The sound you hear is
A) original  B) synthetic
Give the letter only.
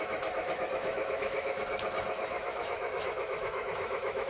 B